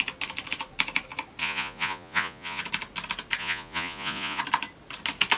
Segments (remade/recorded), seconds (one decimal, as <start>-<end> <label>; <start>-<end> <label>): 0.0-1.4 recorded; 1.4-2.6 remade; 2.6-3.4 recorded; 3.4-4.4 remade; 4.4-5.4 recorded